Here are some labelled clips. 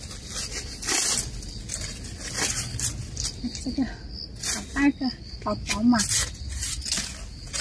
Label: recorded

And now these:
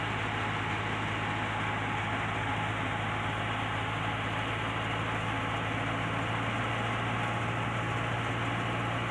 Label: recorded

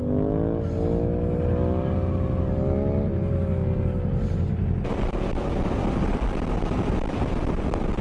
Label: recorded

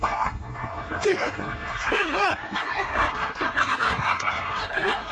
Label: remade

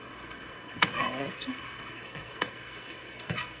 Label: remade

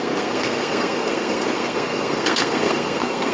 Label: remade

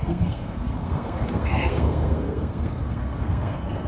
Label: remade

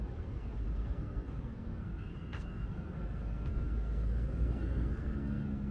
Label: remade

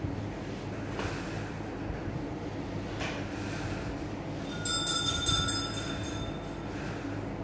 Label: recorded